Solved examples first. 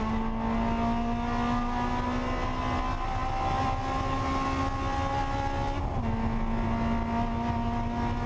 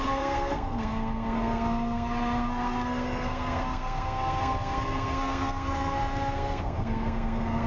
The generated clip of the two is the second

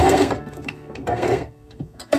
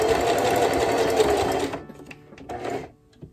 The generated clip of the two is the first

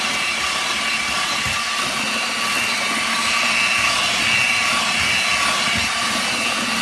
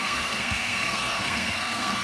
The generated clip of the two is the second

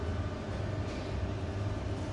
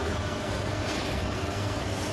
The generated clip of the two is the second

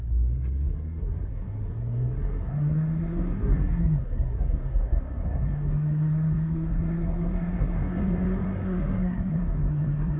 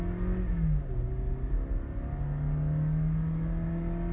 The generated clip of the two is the first